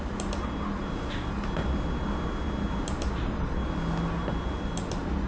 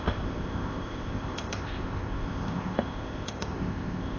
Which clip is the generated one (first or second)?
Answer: second